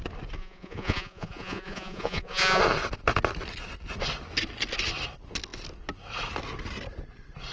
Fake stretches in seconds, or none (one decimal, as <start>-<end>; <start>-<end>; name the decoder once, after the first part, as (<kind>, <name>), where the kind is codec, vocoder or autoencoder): 0.4-2.6 (vocoder, Vocos)